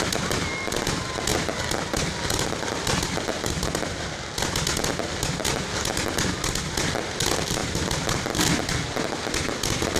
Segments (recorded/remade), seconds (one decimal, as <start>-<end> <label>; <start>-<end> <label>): 0.0-10.0 recorded